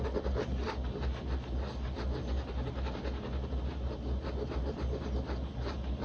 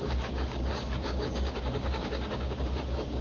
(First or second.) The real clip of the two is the first